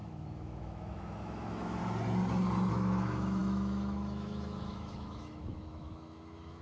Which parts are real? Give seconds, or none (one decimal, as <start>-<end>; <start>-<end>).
1.8-2.7